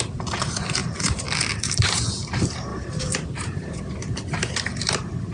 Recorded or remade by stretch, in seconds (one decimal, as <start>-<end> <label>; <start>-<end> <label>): 0.0-0.8 recorded; 0.8-2.0 remade; 2.0-2.7 recorded; 2.7-3.7 remade; 3.7-5.3 recorded